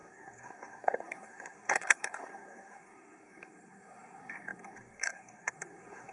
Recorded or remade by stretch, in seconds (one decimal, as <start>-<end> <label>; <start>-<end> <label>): 0.0-6.1 remade